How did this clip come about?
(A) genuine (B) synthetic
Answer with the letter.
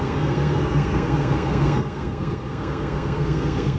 B